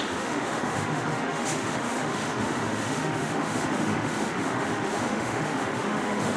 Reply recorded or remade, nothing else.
remade